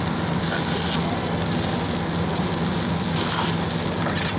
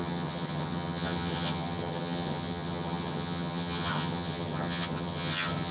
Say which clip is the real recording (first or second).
first